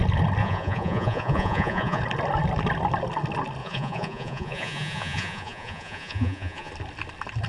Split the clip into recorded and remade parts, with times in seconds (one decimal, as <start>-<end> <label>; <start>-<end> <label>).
0.0-0.4 recorded; 0.4-2.0 remade; 2.0-3.6 recorded; 3.6-6.7 remade; 6.7-7.5 recorded